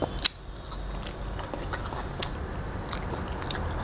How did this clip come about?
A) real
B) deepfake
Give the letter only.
A